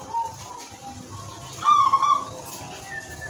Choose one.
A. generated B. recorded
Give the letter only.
B